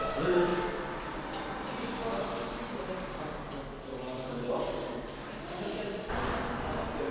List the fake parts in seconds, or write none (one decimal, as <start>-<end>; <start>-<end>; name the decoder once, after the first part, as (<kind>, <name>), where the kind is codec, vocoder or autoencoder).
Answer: none